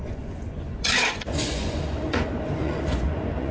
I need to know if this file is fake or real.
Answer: fake